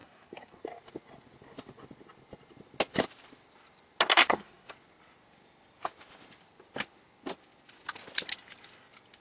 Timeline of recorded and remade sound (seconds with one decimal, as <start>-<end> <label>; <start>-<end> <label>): 0.0-0.6 remade; 0.6-4.1 recorded; 4.1-4.7 remade; 4.7-9.2 recorded